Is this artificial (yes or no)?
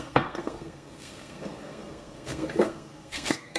yes